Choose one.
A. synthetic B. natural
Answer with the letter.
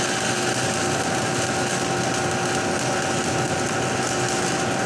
B